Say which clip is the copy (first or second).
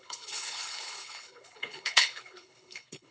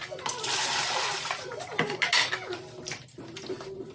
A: first